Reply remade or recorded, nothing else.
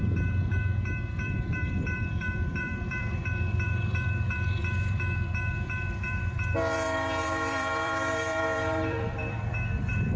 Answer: remade